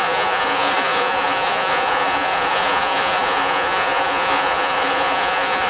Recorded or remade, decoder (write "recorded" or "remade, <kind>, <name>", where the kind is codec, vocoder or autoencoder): remade, vocoder, Vocos